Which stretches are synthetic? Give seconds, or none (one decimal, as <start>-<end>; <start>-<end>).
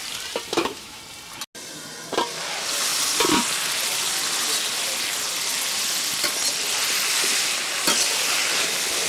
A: 0.5-1.0